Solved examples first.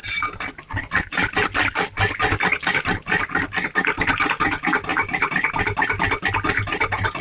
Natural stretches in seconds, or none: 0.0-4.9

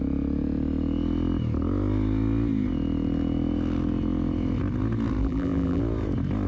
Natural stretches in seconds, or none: 0.0-5.2; 5.8-6.5

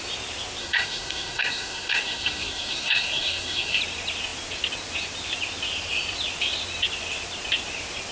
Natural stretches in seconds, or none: 0.0-0.6; 3.8-8.1